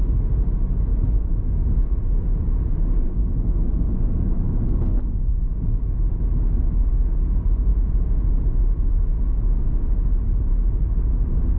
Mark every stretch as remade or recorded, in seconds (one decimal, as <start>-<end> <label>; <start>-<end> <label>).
0.0-0.9 recorded; 0.9-1.4 remade; 1.4-4.9 recorded; 4.9-6.2 remade; 6.2-7.7 recorded; 7.7-8.3 remade; 8.3-11.6 recorded